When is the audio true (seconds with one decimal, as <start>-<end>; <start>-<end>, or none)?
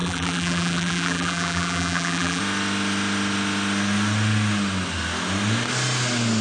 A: 2.4-6.4